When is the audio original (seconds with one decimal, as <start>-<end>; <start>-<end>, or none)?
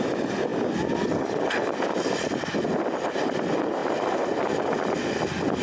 0.0-5.6